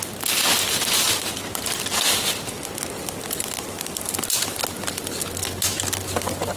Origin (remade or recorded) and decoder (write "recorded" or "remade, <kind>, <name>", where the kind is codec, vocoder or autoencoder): recorded